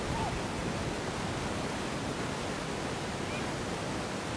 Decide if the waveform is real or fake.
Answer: real